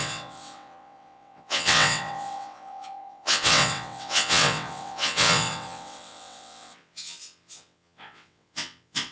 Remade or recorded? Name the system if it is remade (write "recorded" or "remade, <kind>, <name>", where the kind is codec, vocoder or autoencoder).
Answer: remade, vocoder, WaveNeXt